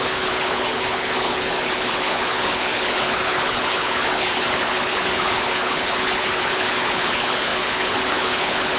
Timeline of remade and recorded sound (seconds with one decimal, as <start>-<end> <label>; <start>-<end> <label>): 0.0-8.8 remade